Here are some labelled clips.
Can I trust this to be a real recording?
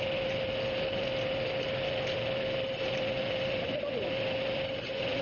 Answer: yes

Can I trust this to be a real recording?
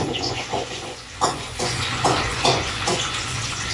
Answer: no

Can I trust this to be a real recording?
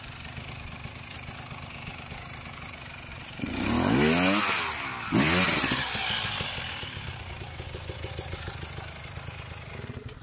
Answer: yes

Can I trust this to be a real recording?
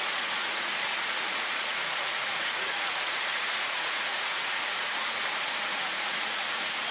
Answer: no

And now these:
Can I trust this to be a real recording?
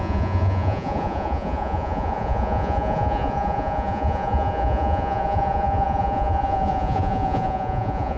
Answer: no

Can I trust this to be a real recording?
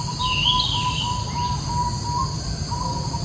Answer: yes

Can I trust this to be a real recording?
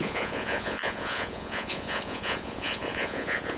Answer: no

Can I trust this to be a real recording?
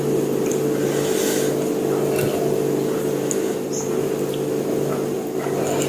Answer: yes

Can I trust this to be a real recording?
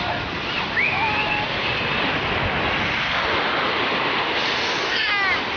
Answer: yes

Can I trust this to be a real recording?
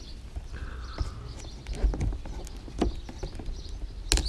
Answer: yes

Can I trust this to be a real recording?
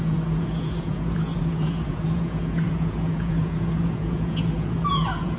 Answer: no